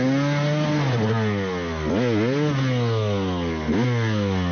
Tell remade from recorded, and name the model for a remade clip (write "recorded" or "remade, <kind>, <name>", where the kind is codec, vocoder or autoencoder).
recorded